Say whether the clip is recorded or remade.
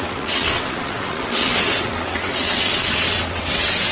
remade